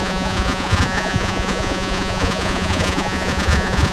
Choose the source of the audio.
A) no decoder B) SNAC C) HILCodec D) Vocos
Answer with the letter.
D